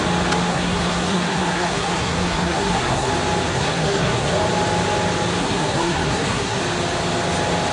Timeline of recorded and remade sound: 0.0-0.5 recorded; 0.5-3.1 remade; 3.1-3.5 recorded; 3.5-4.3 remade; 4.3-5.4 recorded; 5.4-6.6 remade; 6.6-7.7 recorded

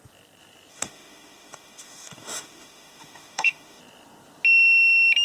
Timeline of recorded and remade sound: 0.0-0.7 recorded; 0.7-3.8 remade; 3.8-5.2 recorded

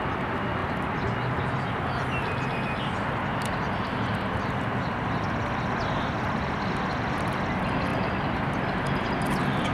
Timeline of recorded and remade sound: 0.0-9.7 recorded

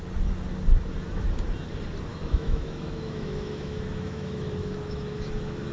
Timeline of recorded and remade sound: 0.0-2.1 recorded; 2.1-5.7 remade

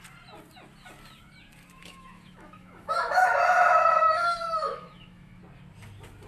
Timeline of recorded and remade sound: 0.0-1.8 recorded; 1.8-5.4 remade; 5.4-6.3 recorded

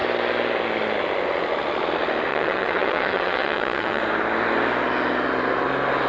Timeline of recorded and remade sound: 0.0-2.3 recorded; 2.3-4.0 remade; 4.0-6.1 recorded